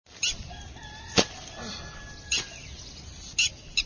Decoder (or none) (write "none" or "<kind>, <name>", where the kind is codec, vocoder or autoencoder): none